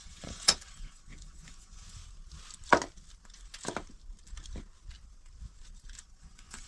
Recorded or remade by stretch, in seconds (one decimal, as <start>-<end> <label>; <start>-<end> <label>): 0.0-2.0 remade; 2.0-6.0 recorded; 6.0-6.7 remade